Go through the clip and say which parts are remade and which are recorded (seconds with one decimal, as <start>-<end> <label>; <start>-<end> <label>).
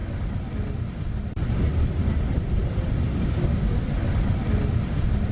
0.0-3.1 recorded; 3.1-3.8 remade; 3.8-5.3 recorded